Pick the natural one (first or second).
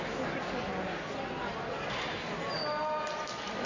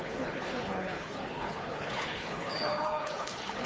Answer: first